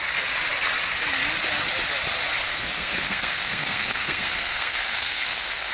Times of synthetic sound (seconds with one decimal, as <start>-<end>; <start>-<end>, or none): 2.5-5.7